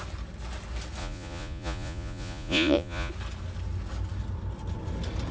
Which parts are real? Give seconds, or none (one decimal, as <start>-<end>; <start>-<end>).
0.0-1.0; 3.1-5.3